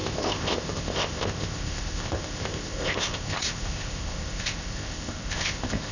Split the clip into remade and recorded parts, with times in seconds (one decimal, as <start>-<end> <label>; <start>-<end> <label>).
0.0-5.9 remade